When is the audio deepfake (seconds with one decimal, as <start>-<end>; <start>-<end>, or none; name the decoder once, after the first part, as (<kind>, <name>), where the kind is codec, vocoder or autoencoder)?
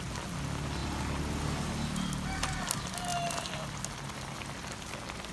none